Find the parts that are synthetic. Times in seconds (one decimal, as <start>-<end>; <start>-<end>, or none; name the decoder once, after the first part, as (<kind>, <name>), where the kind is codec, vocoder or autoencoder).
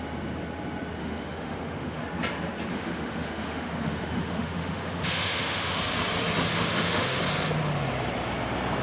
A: 1.0-2.0 (autoencoder, DAC-VAE); 2.7-5.8; 6.5-7.2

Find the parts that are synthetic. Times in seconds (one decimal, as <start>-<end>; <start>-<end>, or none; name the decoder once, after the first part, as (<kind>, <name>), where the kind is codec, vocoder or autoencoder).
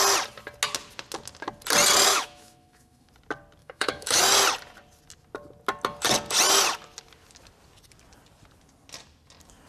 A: 2.1-3.1 (autoencoder, DAC-VAE); 3.6-4.2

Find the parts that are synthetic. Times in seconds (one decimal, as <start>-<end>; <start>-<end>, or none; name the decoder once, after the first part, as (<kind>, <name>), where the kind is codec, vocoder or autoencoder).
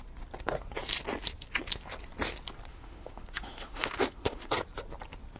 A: 2.7-4.5 (autoencoder, DAC-VAE)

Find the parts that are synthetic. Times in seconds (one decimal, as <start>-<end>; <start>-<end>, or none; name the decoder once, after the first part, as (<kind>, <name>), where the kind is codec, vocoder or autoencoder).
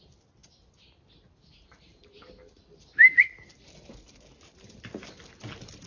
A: none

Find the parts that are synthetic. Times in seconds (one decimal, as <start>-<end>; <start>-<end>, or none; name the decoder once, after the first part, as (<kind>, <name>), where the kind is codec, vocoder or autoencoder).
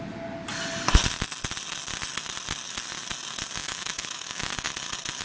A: 3.6-4.5 (autoencoder, DAC-VAE)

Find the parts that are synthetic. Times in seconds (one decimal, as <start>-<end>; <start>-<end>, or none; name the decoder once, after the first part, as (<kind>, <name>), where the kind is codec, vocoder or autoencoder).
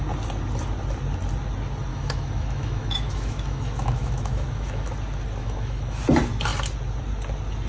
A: 1.9-4.9 (autoencoder, DAC-VAE); 5.4-6.0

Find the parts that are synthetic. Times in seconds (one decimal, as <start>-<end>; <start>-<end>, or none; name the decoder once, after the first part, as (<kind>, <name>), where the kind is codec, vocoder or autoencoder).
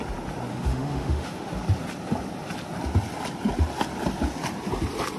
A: 0.5-1.5 (autoencoder, DAC-VAE)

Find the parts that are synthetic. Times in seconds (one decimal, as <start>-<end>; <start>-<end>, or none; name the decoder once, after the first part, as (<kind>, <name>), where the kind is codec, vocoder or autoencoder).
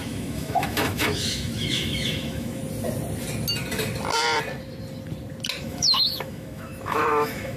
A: 0.0-2.6 (autoencoder, DAC-VAE); 5.6-7.6